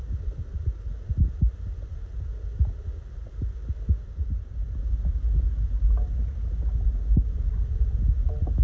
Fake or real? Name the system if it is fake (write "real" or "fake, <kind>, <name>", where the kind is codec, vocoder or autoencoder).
real